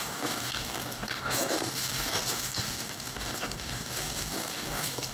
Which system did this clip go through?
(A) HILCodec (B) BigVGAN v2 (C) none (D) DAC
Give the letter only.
D